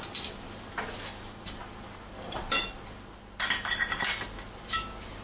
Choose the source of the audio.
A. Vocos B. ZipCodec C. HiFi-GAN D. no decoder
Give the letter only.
D